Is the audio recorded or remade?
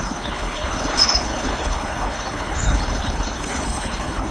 remade